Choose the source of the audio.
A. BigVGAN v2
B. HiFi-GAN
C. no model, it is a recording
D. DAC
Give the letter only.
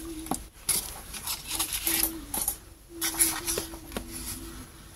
C